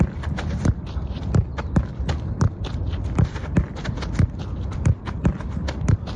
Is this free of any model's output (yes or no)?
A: no